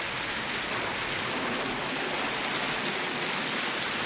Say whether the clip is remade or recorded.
recorded